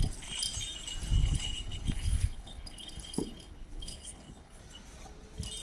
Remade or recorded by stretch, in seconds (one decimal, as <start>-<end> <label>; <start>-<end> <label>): 0.0-1.2 recorded; 1.2-4.6 remade; 4.6-5.6 recorded